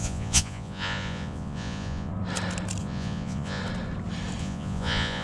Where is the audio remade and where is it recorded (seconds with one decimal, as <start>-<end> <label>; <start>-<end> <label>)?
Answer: 0.0-2.1 remade; 2.1-2.8 recorded; 2.8-3.6 remade; 3.6-4.4 recorded; 4.4-5.2 remade